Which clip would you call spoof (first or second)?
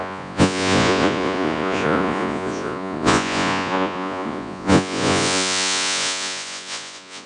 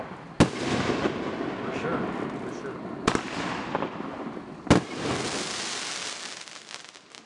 first